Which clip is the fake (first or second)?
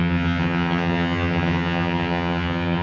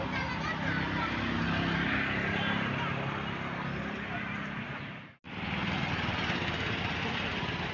first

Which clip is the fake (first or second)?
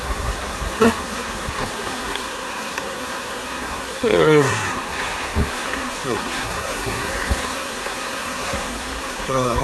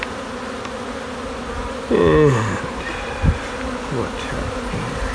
first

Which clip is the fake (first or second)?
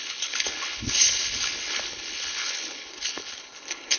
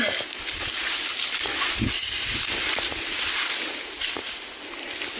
first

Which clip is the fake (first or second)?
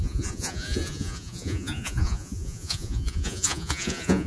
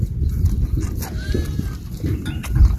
first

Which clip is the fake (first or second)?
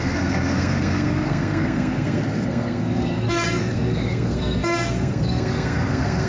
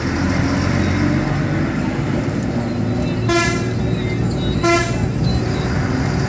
first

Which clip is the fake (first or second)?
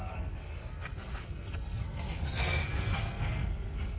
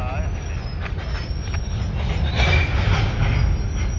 first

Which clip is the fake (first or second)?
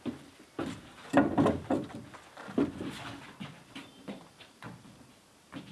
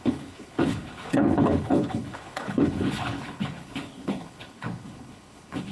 second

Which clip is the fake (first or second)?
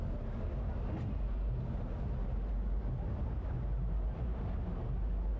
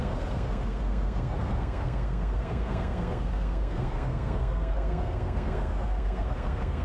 second